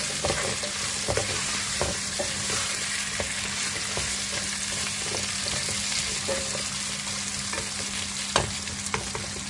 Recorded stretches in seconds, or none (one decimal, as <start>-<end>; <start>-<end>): 0.0-1.2; 2.7-9.5